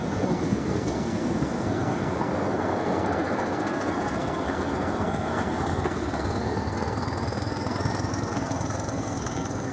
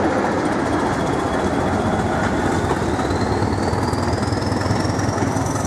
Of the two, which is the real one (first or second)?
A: second